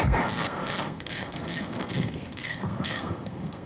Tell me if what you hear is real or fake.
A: fake